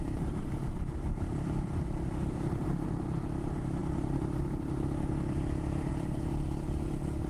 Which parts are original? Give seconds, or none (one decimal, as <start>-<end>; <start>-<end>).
none